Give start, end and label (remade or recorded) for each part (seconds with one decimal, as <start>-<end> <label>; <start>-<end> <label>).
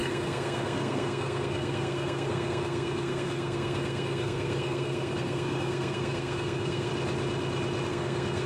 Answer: 0.0-6.9 remade; 6.9-7.9 recorded; 7.9-8.5 remade